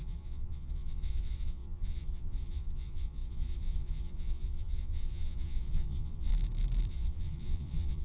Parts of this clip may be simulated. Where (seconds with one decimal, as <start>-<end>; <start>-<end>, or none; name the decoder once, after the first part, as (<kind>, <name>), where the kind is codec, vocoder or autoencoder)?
0.0-6.3 (vocoder, Vocos); 6.9-8.0